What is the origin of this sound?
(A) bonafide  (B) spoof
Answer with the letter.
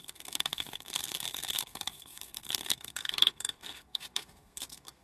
B